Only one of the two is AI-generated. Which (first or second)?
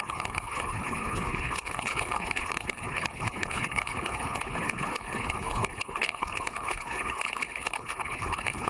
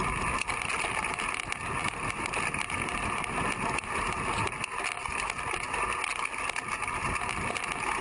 first